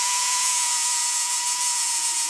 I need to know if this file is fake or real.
fake